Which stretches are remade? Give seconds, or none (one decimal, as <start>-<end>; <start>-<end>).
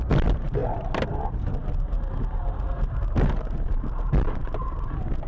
none